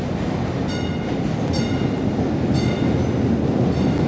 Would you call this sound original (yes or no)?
yes